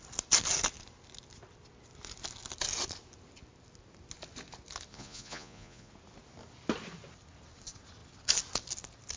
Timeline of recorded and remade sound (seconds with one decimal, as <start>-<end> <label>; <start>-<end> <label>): 0.0-4.9 recorded; 4.9-5.9 remade; 5.9-9.2 recorded